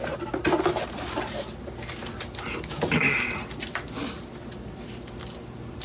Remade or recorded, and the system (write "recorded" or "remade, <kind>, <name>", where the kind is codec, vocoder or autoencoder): recorded